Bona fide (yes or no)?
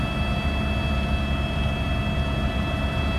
yes